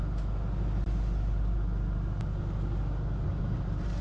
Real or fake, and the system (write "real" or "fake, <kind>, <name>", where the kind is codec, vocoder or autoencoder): real